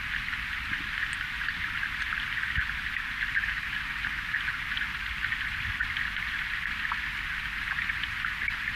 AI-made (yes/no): no